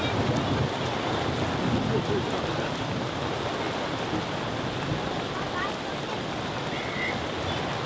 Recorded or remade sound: recorded